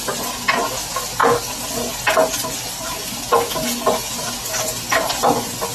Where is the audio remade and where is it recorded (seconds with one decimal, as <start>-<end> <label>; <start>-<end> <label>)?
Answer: 0.0-5.7 recorded

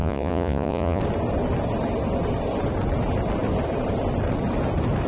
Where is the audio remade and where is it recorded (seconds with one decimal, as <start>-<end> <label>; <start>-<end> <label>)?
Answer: 0.0-1.0 remade; 1.0-5.1 recorded